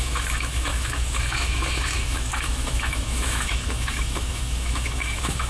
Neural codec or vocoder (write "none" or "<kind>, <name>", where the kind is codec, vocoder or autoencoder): autoencoder, DAC-VAE